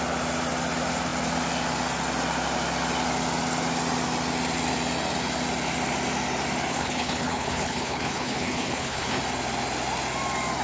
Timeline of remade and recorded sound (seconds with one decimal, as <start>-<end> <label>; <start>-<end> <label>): 0.0-6.7 recorded; 6.7-9.2 remade; 9.2-10.6 recorded